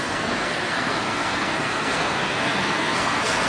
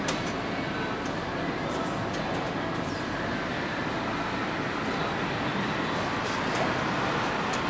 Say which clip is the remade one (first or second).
first